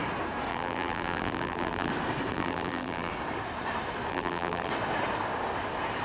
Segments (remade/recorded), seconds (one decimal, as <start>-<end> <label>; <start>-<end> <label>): 0.0-0.5 recorded; 0.5-1.9 remade; 1.9-2.3 recorded; 2.3-3.1 remade; 3.1-4.1 recorded; 4.1-4.7 remade; 4.7-6.0 recorded